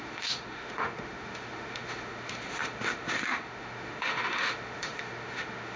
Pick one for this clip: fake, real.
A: fake